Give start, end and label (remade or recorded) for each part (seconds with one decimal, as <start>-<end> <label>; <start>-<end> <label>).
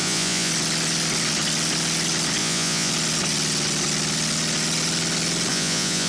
0.0-0.5 remade; 0.5-2.4 recorded; 2.4-2.9 remade; 2.9-5.5 recorded; 5.5-6.1 remade